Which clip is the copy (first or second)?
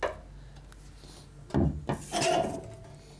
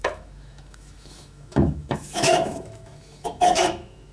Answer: second